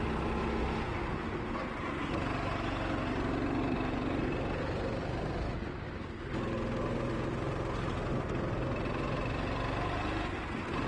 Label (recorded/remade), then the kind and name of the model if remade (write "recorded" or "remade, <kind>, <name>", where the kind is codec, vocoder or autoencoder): recorded